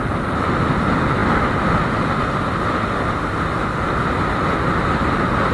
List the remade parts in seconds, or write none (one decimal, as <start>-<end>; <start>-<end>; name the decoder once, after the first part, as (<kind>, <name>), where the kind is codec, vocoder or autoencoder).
none